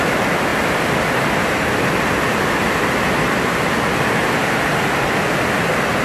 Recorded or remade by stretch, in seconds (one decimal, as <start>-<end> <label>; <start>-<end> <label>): 0.0-6.0 recorded